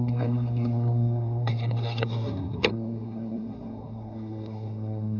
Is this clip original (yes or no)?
no